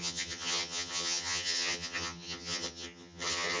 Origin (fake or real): fake